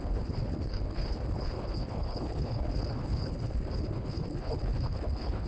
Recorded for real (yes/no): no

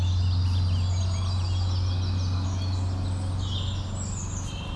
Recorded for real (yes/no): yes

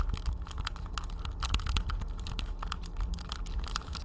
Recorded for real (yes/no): yes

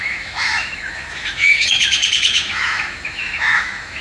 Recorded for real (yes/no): no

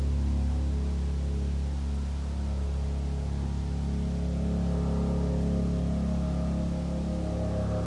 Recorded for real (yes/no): yes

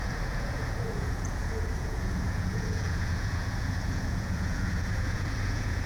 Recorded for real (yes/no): no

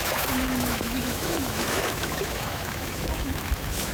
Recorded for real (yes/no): no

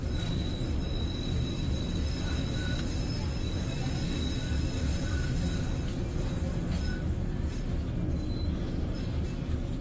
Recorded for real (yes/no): yes